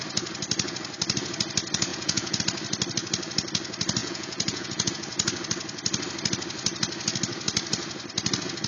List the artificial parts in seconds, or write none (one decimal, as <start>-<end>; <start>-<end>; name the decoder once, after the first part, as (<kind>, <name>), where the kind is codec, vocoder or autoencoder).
1.9-2.4 (vocoder, Vocos); 4.0-4.9